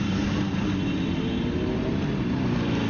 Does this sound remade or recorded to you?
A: recorded